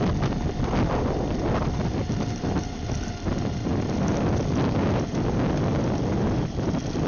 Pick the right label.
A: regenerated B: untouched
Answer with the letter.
B